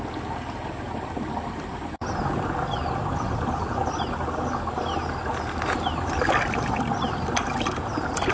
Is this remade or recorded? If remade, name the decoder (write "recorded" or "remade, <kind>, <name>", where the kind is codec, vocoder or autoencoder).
recorded